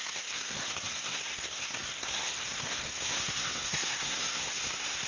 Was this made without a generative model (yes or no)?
no